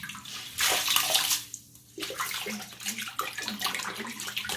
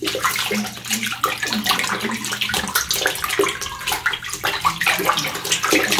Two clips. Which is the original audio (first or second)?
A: second